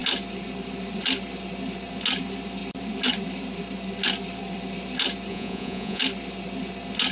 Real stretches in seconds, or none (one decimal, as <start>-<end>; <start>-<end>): 0.0-5.3; 6.0-7.1